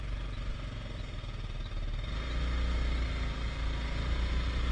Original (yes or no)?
yes